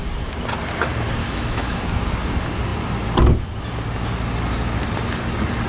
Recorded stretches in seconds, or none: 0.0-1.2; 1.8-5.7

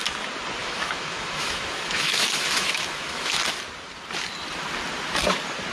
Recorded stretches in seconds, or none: 0.0-0.6; 3.4-5.7

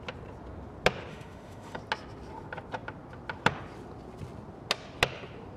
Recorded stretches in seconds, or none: 0.0-1.1; 1.8-5.6

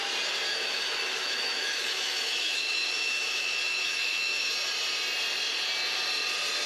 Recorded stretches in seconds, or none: 0.0-0.5; 4.5-6.7